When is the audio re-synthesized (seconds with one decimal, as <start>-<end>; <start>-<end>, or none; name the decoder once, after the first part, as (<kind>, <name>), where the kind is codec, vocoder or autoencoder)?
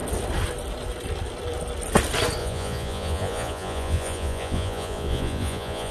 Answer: 2.4-5.9 (vocoder, Vocos)